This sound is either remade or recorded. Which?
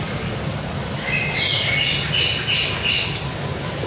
recorded